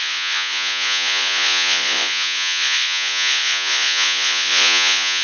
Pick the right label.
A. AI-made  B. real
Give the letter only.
A